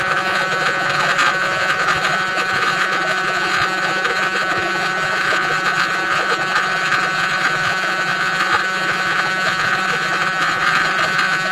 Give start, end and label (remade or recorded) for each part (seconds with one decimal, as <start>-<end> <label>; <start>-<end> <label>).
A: 0.0-11.5 remade